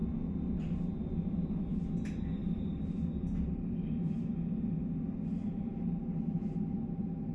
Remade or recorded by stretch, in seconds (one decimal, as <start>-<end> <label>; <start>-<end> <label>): 0.0-7.3 recorded